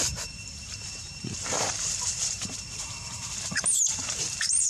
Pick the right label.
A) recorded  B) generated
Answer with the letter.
B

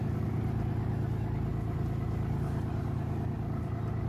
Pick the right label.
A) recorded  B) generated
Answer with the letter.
A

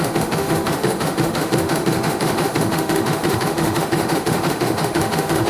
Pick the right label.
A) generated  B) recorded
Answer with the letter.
A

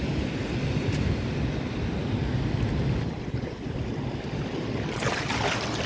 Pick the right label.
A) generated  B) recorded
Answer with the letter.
B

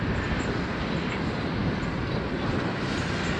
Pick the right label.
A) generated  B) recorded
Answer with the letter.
B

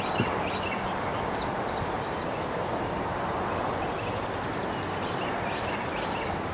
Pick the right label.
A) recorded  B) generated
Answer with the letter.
A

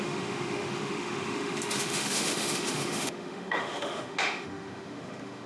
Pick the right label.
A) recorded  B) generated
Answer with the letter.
B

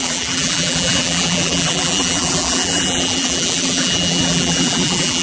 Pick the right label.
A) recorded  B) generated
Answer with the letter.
B